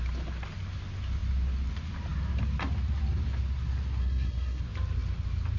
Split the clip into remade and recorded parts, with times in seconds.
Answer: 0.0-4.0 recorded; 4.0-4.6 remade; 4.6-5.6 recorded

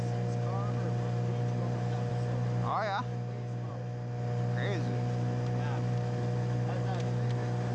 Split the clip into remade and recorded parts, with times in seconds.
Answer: 0.0-7.7 recorded

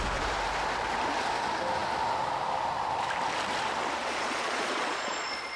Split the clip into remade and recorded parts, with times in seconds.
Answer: 0.0-4.0 recorded; 4.0-5.6 remade

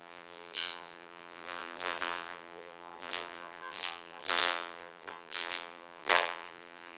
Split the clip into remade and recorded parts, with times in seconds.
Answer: 0.0-7.0 remade

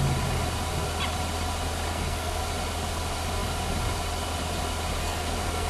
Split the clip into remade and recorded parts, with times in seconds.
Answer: 0.0-1.9 recorded; 1.9-2.4 remade; 2.4-5.0 recorded; 5.0-5.7 remade